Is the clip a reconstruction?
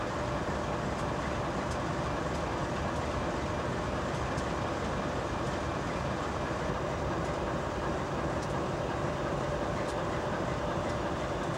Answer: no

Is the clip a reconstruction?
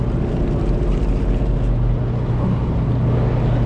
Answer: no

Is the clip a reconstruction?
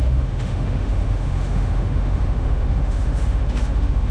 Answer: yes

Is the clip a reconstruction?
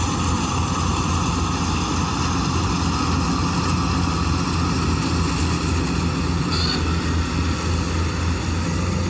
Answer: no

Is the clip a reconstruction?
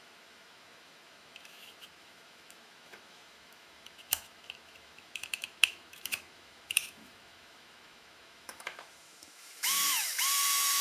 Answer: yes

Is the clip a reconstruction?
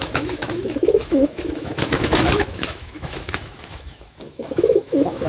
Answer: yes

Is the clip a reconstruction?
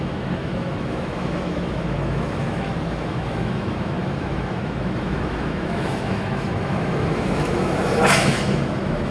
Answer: yes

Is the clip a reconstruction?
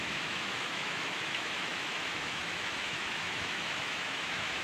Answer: yes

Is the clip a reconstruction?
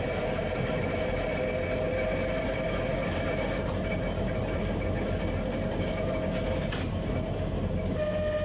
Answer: no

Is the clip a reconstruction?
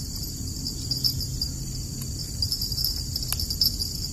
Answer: no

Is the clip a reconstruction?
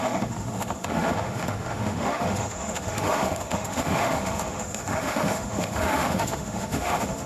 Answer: yes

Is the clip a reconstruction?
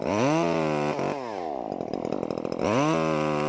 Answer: no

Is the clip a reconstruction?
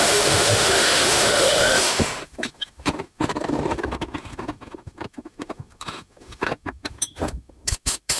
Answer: yes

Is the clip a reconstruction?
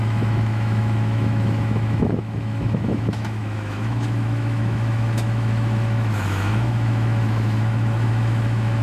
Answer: yes